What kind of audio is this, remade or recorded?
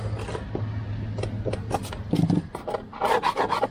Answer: recorded